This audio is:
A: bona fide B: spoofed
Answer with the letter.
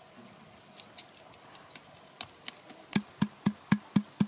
A